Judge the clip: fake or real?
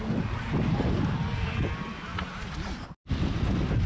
real